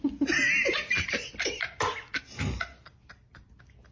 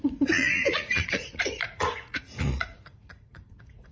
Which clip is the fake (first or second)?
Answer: second